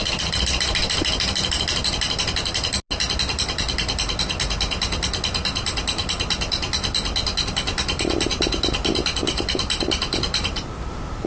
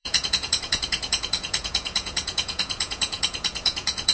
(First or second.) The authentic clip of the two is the first